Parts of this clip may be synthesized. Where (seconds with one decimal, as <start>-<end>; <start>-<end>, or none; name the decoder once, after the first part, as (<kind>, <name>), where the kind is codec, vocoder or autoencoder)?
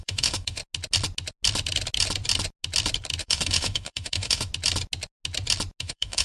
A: 0.0-0.6 (autoencoder, DAC-VAE); 3.2-4.5; 5.8-6.2